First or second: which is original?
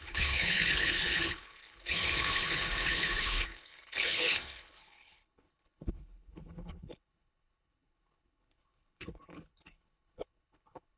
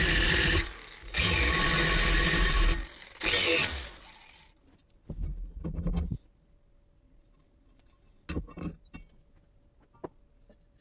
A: second